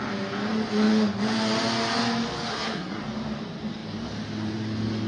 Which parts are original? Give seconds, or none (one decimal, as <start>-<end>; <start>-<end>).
0.0-2.5; 3.0-5.1